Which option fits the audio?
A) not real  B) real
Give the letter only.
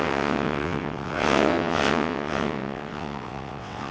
A